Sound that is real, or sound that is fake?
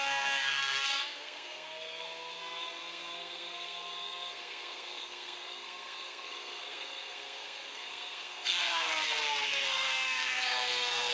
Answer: fake